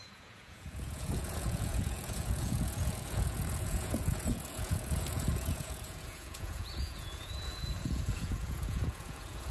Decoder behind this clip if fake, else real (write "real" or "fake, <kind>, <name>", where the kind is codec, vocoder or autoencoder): fake, vocoder, Vocos